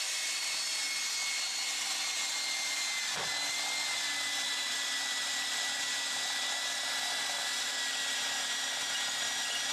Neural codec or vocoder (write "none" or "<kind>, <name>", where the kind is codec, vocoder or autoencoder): none